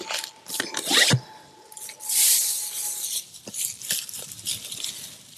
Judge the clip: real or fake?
real